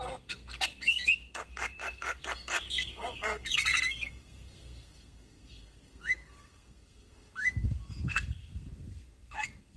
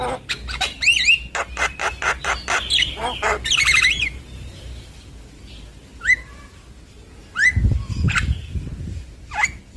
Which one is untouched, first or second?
second